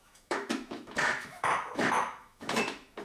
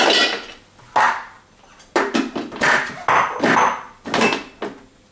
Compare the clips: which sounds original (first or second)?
second